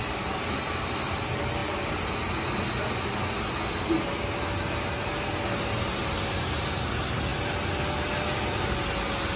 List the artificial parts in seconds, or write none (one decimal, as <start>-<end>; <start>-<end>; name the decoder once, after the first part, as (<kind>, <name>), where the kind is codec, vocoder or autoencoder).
none